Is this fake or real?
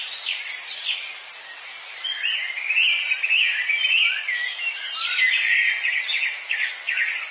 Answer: real